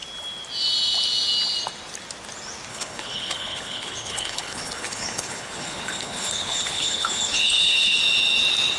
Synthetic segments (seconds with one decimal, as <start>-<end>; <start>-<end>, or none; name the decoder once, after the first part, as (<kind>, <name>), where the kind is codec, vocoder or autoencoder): 2.7-8.0 (codec, HILCodec)